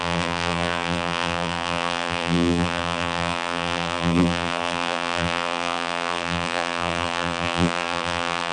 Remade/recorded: remade